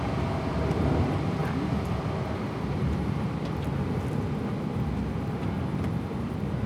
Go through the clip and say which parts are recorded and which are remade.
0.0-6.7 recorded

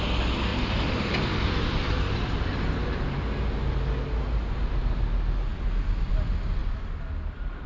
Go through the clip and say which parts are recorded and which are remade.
0.0-0.5 recorded; 0.5-2.6 remade; 2.6-5.5 recorded; 5.5-6.1 remade; 6.1-7.7 recorded